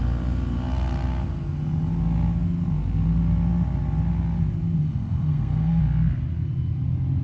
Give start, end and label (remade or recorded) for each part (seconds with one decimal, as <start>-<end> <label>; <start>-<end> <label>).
0.0-4.8 recorded; 4.8-5.8 remade; 5.8-7.2 recorded